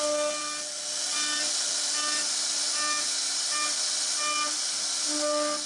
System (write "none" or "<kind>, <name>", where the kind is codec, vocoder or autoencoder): none